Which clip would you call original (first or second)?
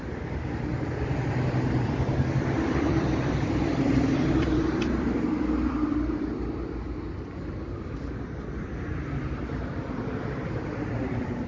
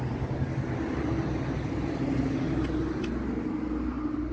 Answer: second